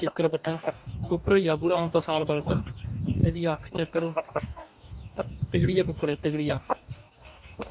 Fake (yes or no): yes